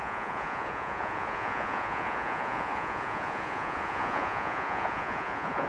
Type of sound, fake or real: fake